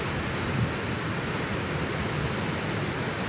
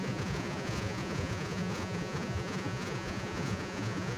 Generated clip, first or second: second